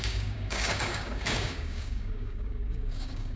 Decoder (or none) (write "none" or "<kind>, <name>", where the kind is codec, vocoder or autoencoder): codec, DAC